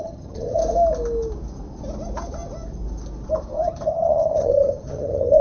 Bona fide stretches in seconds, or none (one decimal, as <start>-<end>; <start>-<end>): 0.6-3.7